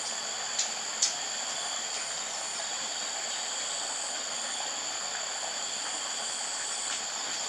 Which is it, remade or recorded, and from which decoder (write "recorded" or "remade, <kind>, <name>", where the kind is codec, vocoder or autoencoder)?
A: recorded